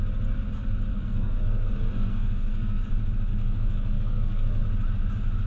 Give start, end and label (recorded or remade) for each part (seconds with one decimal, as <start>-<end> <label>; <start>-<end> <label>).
0.0-0.9 recorded; 0.9-1.7 remade; 1.7-2.1 recorded; 2.1-2.9 remade; 2.9-3.3 recorded; 3.3-4.6 remade; 4.6-5.5 recorded